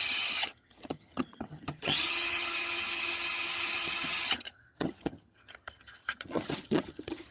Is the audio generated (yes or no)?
yes